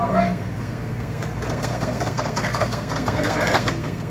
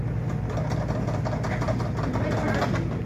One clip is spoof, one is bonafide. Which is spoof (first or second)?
first